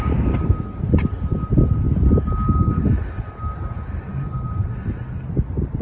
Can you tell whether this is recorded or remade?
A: recorded